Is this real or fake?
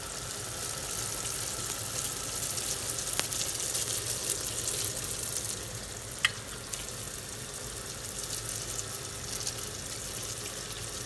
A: real